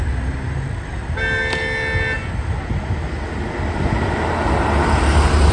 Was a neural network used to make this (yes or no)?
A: no